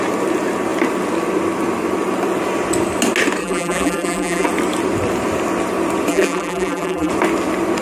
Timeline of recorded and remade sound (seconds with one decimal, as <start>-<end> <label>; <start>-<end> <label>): 0.0-3.4 recorded; 3.4-4.5 remade; 4.5-6.1 recorded; 6.1-7.1 remade; 7.1-7.8 recorded